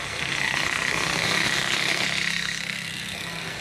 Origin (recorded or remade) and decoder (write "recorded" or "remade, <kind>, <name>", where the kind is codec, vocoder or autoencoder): remade, codec, SNAC